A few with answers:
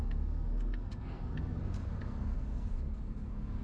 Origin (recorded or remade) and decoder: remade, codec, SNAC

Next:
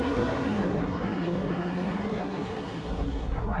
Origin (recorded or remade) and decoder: remade, codec, SNAC